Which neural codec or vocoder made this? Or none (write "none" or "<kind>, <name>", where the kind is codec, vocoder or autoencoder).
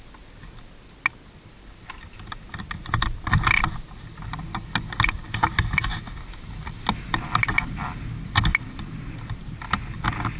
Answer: none